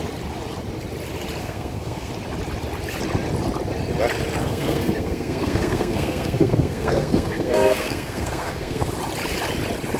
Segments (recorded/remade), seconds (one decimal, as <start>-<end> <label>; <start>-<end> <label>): 0.0-1.4 recorded; 1.4-2.1 remade; 2.1-4.4 recorded; 4.4-8.9 remade; 8.9-10.0 recorded